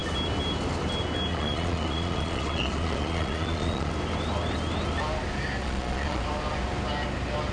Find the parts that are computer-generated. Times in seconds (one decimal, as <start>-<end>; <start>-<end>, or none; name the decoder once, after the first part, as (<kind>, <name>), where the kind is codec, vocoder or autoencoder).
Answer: 1.3-3.9 (vocoder, Vocos); 5.6-6.2